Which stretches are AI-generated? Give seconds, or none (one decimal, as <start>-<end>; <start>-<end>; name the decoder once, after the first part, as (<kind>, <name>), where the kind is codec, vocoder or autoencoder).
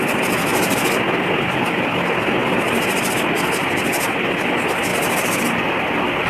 4.9-6.3 (vocoder, BigVGAN v2)